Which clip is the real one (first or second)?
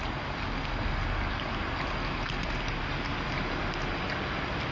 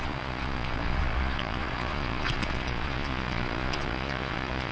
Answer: first